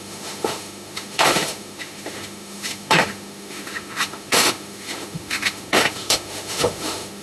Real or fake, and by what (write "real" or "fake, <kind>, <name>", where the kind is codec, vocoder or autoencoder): fake, autoencoder, DAC-VAE